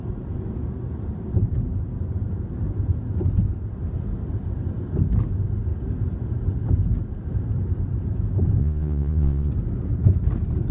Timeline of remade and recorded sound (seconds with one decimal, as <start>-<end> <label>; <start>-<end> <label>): 0.0-8.6 recorded; 8.6-9.5 remade; 9.5-10.7 recorded